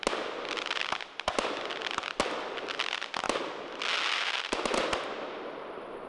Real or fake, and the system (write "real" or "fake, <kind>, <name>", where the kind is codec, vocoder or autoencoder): real